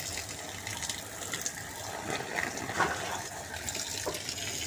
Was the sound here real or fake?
real